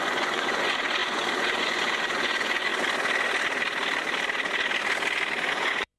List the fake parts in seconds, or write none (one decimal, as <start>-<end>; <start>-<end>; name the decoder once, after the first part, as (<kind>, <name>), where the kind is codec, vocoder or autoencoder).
0.0-2.7 (vocoder, Vocos); 5.5-6.0